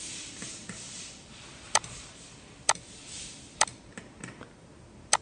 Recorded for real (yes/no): no